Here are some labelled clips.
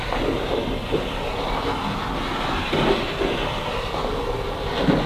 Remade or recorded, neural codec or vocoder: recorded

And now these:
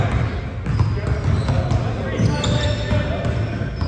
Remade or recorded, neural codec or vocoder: recorded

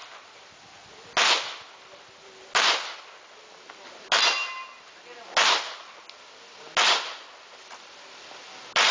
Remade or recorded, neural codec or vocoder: recorded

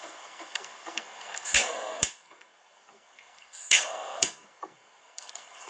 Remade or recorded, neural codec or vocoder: remade, codec, SNAC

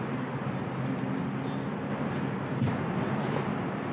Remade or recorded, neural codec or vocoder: recorded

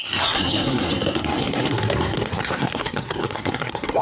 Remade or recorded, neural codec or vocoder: remade, codec, SNAC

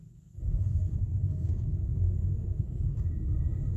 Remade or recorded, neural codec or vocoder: remade, codec, SNAC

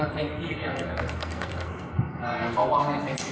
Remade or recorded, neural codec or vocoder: remade, codec, SNAC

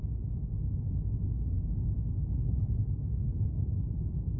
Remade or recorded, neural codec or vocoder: recorded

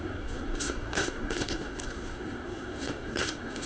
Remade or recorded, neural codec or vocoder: remade, codec, SNAC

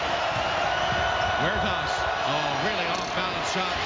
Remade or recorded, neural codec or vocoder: recorded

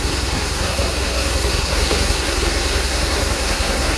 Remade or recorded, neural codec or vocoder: remade, codec, SNAC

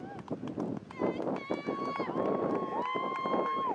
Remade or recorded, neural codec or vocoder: recorded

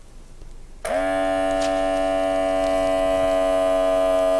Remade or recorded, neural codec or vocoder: recorded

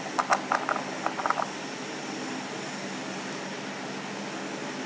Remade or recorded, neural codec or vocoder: recorded